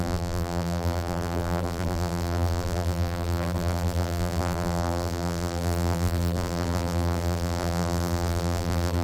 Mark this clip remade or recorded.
remade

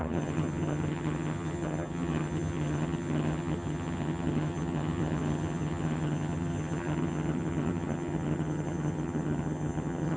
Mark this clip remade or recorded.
remade